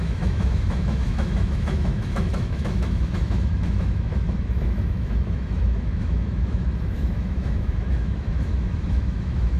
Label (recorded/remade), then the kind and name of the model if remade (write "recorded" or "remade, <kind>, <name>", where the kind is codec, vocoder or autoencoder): remade, autoencoder, DAC-VAE